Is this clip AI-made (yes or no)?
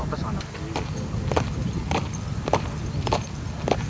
no